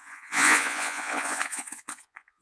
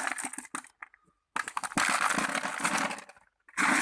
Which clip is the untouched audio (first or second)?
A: second